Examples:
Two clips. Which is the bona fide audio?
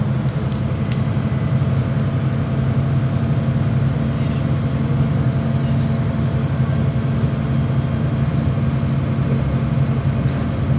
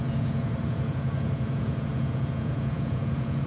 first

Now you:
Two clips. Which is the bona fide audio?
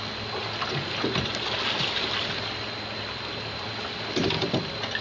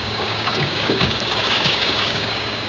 first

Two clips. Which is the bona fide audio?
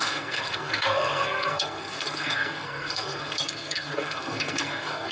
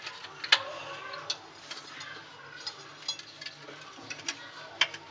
second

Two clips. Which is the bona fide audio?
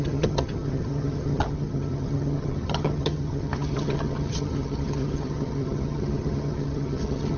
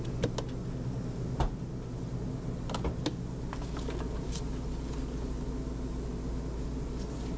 second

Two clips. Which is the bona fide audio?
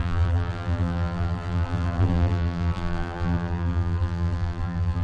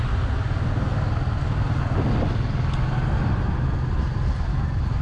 second